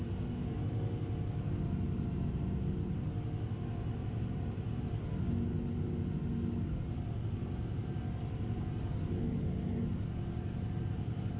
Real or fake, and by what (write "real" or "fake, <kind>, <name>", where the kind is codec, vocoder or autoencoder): real